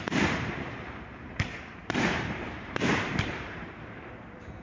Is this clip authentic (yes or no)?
no